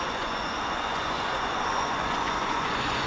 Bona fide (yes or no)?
no